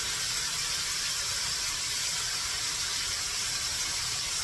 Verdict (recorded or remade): recorded